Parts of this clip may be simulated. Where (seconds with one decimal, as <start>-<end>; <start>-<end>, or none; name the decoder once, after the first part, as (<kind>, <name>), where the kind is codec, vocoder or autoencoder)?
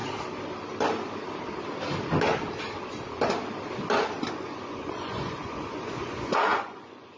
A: 4.3-7.2 (vocoder, Vocos)